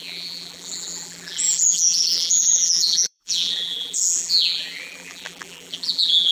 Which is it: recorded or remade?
remade